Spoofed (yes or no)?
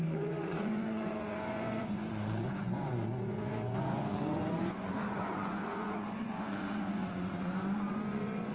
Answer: yes